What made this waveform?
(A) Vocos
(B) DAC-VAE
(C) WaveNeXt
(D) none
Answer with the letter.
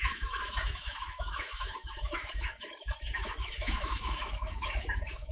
B